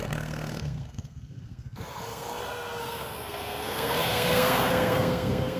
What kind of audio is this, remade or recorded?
remade